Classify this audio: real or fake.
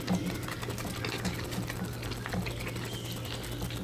real